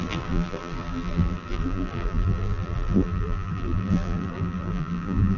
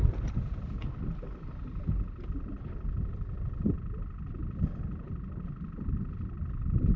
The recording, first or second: second